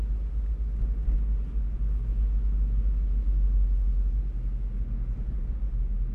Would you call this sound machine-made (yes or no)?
no